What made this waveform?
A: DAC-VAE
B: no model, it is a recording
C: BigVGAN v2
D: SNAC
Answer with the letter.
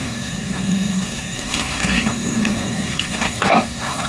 D